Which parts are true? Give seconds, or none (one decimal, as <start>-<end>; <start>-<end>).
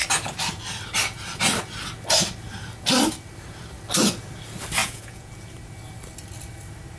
0.0-4.8; 5.3-7.0